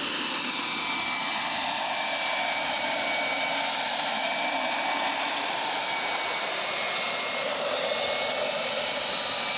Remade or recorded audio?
recorded